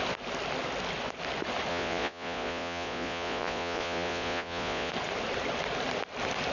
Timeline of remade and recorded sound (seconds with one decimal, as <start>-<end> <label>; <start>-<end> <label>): 0.0-1.7 recorded; 1.7-4.9 remade; 4.9-6.5 recorded